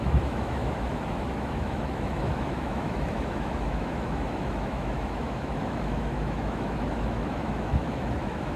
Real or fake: fake